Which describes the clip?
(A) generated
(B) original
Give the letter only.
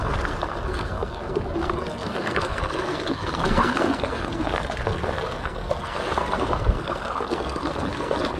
A